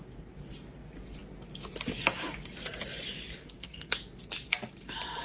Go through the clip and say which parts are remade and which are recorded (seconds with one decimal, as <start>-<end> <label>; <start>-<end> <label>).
0.0-3.4 recorded; 3.4-3.9 remade; 3.9-5.2 recorded